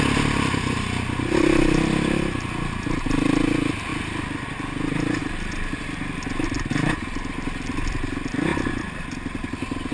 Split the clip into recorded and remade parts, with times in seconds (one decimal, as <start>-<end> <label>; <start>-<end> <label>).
0.0-9.9 recorded